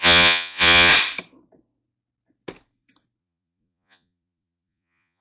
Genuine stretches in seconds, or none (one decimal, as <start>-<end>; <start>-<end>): 0.9-3.2

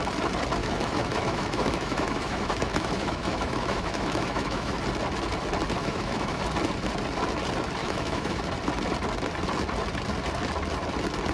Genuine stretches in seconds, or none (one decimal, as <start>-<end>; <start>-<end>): 0.0-0.6; 4.8-5.8; 6.4-7.8; 8.4-11.3

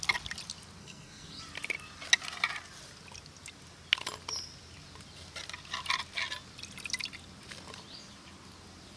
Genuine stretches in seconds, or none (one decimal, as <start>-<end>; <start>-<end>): 0.0-0.8; 1.4-9.0